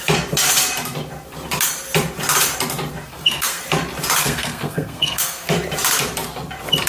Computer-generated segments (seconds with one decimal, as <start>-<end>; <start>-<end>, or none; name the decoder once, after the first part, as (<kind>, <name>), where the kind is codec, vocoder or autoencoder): 3.1-3.6 (codec, SNAC); 4.2-5.5